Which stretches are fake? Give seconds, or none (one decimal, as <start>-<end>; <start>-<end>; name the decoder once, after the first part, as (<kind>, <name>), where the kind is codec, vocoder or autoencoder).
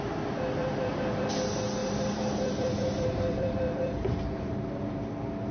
0.6-1.3 (vocoder, BigVGAN v2); 1.8-5.1